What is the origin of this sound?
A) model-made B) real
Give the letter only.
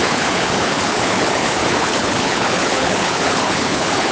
A